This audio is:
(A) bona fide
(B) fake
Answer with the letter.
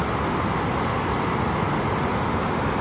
A